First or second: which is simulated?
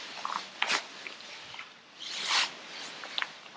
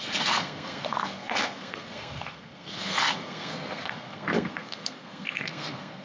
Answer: second